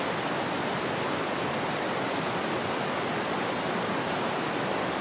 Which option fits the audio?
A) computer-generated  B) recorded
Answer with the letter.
B